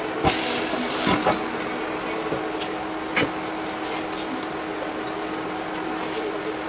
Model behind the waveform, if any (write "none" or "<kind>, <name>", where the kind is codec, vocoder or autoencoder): none